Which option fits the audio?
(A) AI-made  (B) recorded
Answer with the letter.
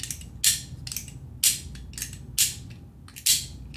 B